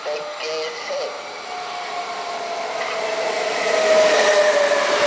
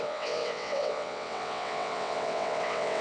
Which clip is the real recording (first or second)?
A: first